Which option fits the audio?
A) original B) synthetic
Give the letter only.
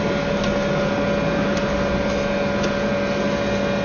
A